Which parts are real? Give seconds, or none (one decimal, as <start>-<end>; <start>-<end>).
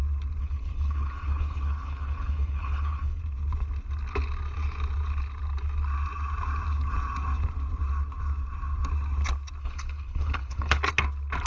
0.0-0.4; 3.2-9.6; 10.8-11.5